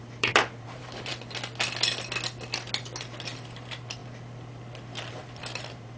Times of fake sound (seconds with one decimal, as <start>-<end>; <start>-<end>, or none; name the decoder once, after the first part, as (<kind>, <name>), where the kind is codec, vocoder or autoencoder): 0.0-1.1 (vocoder, BigVGAN v2); 3.0-4.0; 5.1-6.0